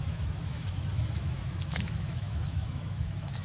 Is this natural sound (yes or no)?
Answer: no